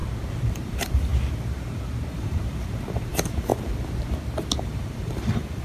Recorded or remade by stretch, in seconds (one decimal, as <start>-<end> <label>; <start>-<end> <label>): 0.0-0.5 recorded; 0.5-1.1 remade; 1.1-2.1 recorded; 2.1-3.5 remade; 3.5-4.6 recorded; 4.6-5.6 remade